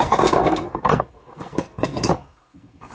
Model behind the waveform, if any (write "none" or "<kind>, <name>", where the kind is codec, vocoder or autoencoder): codec, SNAC